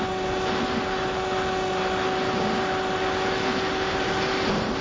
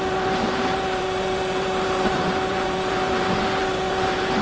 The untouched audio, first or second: first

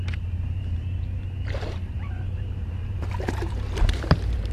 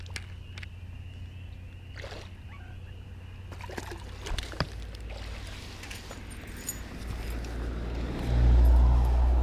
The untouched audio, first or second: second